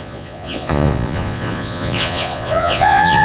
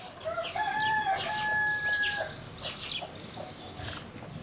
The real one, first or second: second